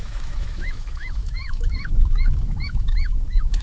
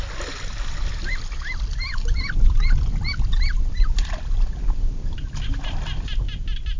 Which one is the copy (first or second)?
first